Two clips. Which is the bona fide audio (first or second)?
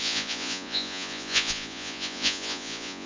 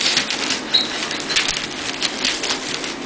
second